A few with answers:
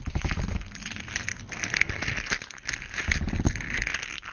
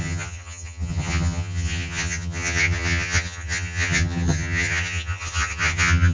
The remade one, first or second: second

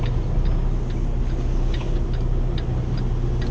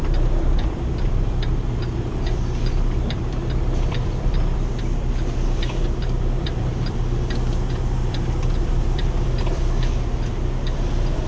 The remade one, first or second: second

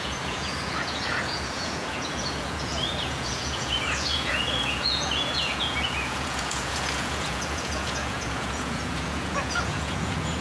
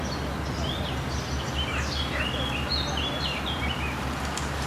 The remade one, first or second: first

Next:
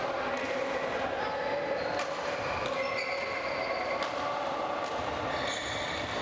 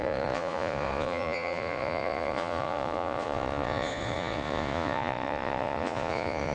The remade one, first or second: second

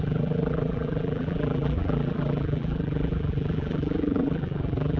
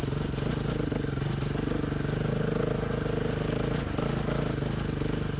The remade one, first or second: first